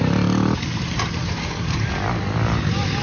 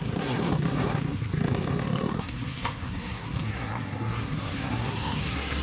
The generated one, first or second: second